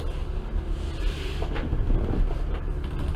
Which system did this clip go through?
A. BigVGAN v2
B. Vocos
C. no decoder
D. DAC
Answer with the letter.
C